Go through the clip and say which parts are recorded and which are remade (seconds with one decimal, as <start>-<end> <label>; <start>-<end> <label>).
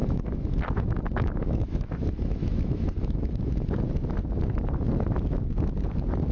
0.0-3.8 remade; 3.8-6.3 recorded